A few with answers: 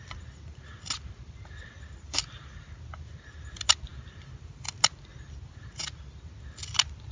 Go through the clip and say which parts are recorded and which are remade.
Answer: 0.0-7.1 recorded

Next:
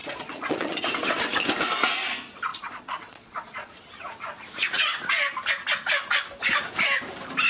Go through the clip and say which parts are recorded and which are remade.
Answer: 0.0-0.8 remade; 0.8-2.5 recorded; 2.5-3.8 remade; 3.8-7.5 recorded

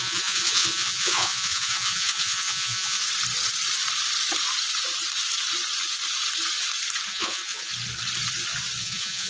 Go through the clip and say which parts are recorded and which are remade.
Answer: 0.0-3.0 remade; 3.0-7.1 recorded; 7.1-7.7 remade; 7.7-8.8 recorded; 8.8-9.3 remade